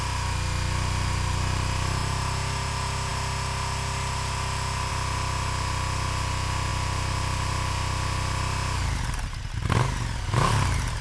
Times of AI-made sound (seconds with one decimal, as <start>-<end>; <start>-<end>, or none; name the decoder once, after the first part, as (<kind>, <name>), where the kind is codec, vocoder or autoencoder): none